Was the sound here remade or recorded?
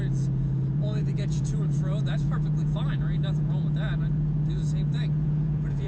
remade